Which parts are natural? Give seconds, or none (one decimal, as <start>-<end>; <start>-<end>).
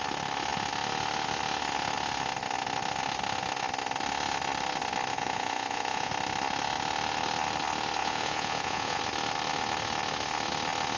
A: 0.0-5.1; 6.1-8.0; 9.0-11.0